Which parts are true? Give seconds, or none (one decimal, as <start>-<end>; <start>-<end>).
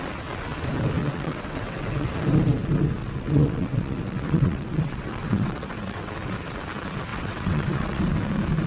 0.0-1.0; 2.1-3.0; 6.1-7.1; 8.0-8.7